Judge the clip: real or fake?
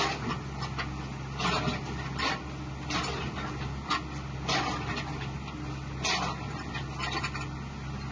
real